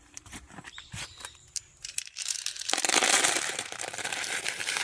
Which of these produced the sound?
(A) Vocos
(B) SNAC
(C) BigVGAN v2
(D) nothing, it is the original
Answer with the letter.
C